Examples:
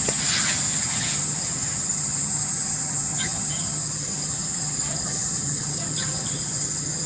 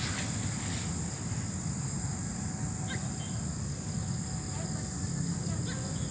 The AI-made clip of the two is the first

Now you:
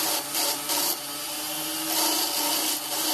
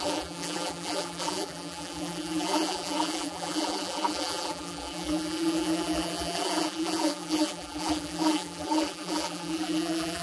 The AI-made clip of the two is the second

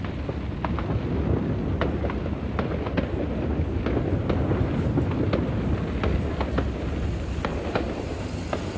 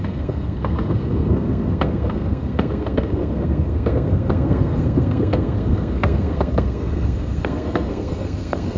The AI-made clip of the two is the second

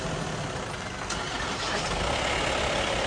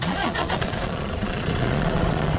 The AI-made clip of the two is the second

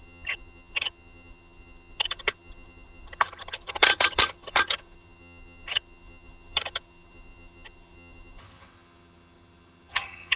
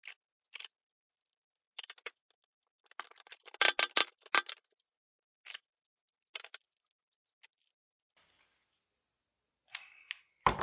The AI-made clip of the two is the first